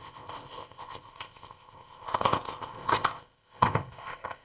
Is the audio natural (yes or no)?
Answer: no